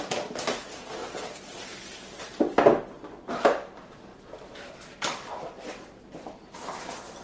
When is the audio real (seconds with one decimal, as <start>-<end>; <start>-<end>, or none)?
0.0-7.2